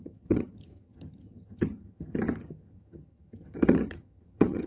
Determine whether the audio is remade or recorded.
remade